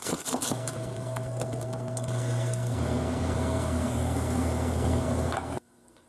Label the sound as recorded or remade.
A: remade